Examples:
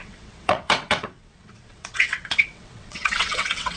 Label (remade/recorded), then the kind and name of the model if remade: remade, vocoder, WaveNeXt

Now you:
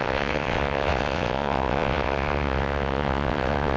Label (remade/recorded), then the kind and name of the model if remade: remade, vocoder, WaveNeXt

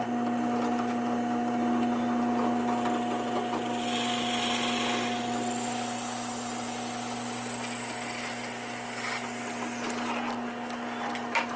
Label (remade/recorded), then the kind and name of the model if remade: recorded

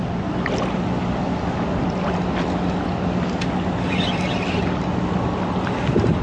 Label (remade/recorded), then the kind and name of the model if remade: recorded